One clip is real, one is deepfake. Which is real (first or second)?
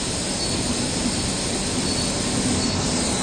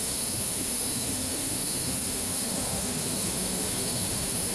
first